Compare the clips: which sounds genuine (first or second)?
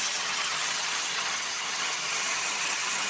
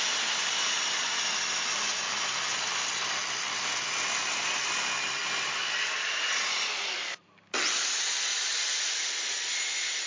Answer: second